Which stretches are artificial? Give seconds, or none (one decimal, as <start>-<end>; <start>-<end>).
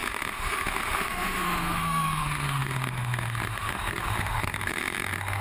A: 0.0-5.4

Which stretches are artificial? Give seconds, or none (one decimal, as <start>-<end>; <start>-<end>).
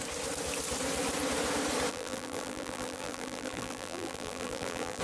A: 1.9-5.0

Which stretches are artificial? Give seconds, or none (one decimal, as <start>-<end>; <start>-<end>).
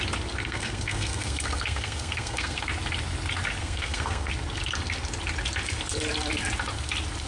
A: 0.4-2.7; 3.6-4.3